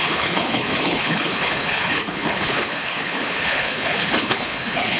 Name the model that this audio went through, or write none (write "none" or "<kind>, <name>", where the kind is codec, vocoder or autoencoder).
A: codec, HILCodec